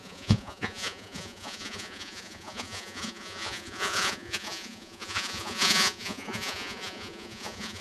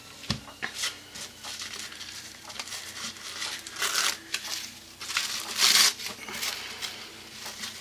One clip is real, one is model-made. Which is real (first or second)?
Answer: second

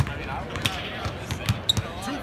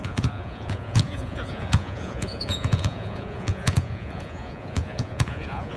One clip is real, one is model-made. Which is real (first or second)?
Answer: first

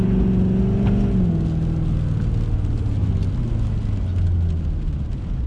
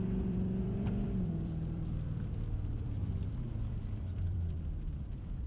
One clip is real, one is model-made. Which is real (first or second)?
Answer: first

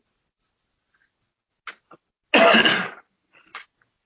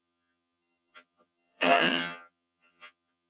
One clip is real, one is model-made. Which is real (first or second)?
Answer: first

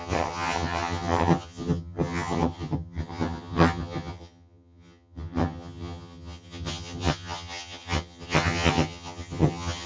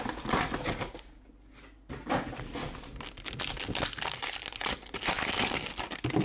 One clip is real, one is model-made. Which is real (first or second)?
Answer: second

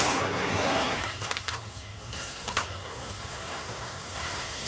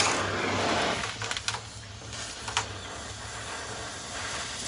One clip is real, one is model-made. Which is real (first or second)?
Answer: second